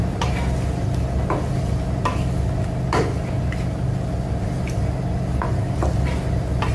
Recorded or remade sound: recorded